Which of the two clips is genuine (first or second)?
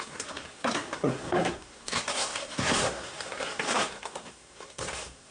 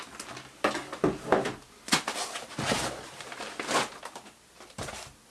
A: second